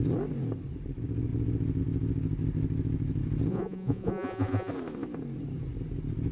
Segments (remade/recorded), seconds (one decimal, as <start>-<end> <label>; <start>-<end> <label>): 0.0-3.5 recorded; 3.5-4.7 remade; 4.7-6.3 recorded